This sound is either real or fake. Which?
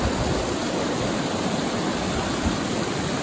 real